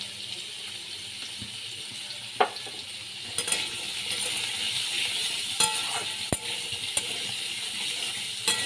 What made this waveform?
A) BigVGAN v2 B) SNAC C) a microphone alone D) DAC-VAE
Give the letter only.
C